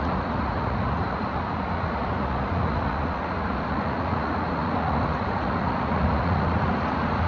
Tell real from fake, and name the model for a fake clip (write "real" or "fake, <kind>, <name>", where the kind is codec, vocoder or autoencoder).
fake, vocoder, Vocos